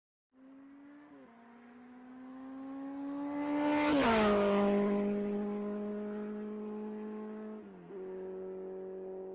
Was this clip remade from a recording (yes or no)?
no